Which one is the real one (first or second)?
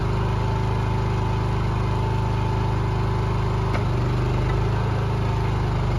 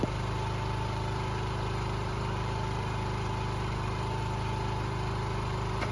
first